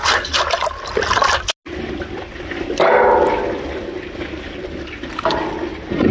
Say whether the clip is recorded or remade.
recorded